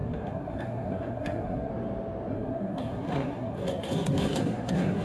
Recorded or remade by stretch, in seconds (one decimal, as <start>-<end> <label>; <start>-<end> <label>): 0.0-1.7 remade; 1.7-2.3 recorded; 2.3-5.0 remade